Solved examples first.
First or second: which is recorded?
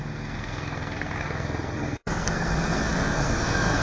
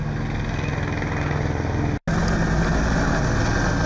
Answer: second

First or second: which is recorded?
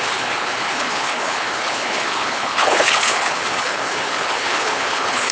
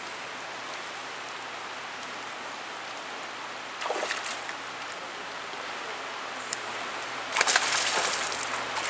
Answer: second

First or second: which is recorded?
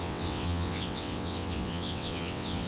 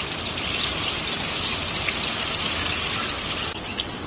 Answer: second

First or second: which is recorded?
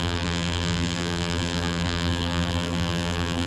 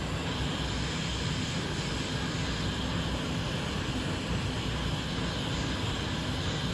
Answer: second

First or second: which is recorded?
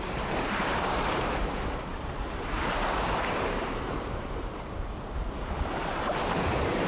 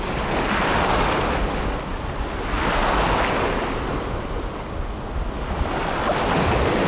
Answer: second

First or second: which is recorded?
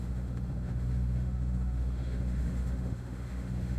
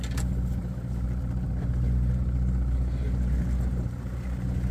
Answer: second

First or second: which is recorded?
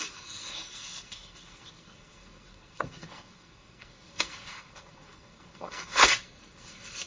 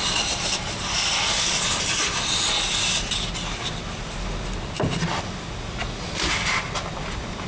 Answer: second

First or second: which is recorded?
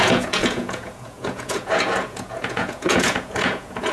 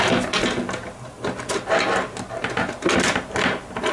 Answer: second